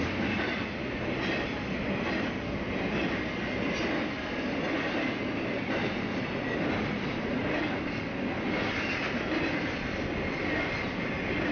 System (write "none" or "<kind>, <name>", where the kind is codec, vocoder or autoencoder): none